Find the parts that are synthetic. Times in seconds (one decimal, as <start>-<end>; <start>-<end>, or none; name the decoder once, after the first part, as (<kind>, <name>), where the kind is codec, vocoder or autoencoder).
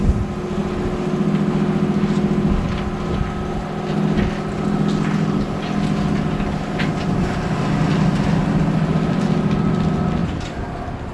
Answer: 10.2-10.7 (vocoder, BigVGAN v2)